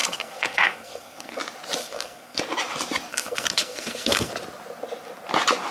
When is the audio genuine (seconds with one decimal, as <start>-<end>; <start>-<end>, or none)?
1.4-1.8; 2.4-3.1; 4.3-5.7